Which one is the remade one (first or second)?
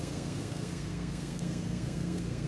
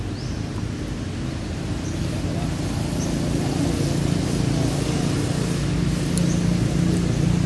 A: first